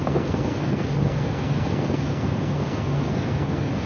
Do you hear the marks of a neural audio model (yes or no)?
yes